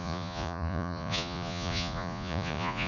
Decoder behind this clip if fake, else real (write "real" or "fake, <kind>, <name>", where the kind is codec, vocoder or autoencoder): fake, vocoder, Vocos